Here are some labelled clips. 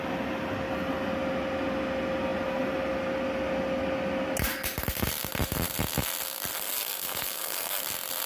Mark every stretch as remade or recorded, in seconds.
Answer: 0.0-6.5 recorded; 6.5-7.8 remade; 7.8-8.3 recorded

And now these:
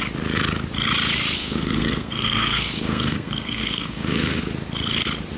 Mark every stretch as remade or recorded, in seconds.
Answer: 0.0-1.4 recorded; 1.4-4.4 remade; 4.4-5.4 recorded

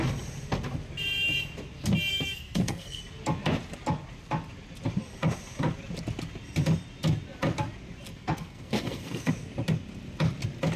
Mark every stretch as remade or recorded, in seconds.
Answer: 0.0-2.1 recorded; 2.1-3.0 remade; 3.0-8.1 recorded; 8.1-9.3 remade; 9.3-10.8 recorded

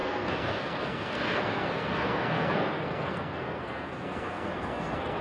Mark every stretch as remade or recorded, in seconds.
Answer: 0.0-5.2 remade